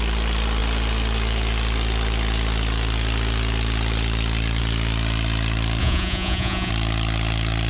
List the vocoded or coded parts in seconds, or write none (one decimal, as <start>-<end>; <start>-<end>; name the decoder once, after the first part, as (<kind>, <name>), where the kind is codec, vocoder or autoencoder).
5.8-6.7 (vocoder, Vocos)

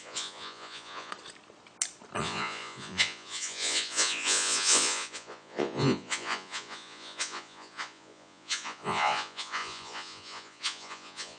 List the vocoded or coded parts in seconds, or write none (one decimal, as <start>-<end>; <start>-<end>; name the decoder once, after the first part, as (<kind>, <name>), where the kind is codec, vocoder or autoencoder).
0.0-1.1 (vocoder, Vocos); 2.2-11.4

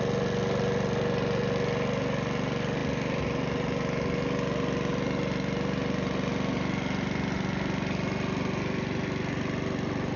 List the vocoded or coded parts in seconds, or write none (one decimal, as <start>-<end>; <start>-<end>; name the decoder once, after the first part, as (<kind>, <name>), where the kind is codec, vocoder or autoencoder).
none

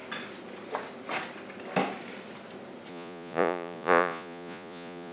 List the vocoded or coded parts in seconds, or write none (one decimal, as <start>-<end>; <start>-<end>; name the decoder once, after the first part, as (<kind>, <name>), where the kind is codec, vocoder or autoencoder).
2.9-5.1 (vocoder, Vocos)